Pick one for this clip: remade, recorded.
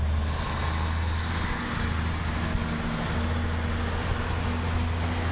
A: recorded